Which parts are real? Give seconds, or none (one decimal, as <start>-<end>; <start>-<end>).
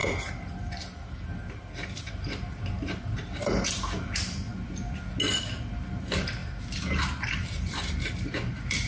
4.5-6.0; 6.4-7.3